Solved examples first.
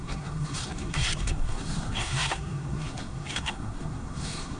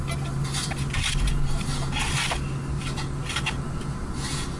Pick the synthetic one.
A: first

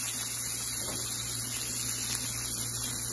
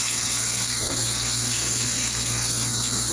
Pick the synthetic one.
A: second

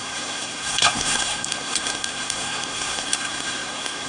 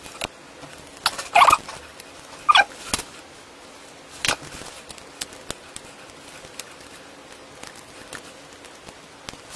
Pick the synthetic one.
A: first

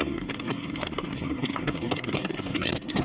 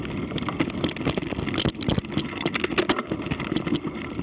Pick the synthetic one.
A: first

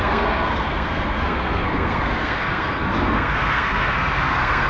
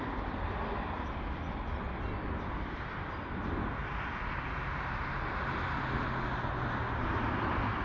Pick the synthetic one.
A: first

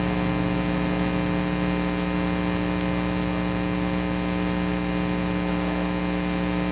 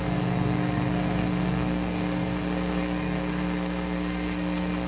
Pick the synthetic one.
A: second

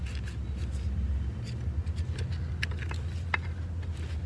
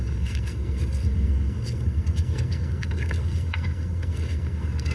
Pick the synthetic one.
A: second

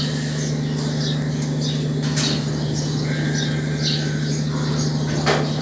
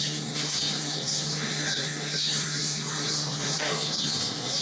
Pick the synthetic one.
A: second